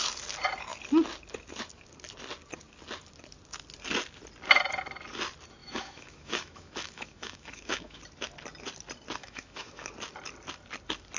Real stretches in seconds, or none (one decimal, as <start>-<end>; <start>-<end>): 0.0-5.6; 8.0-9.2; 9.9-11.2